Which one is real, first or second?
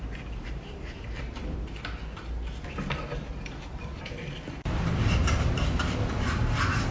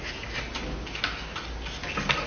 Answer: second